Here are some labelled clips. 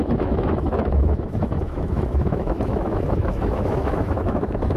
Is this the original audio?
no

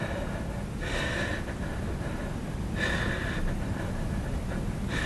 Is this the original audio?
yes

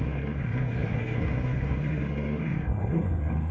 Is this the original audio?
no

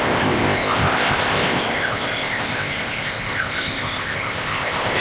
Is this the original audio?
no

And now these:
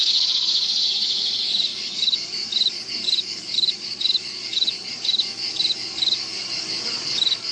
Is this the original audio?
no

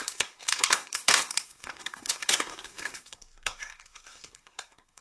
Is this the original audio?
no